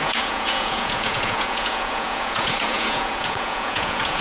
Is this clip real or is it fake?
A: fake